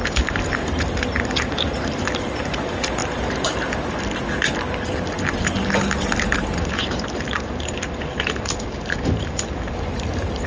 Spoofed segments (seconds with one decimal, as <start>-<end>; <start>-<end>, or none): 0.0-3.0; 6.3-10.5